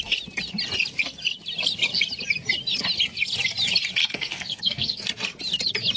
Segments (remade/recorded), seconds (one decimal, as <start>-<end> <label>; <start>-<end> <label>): 0.0-4.0 recorded; 4.0-5.0 remade; 5.0-6.0 recorded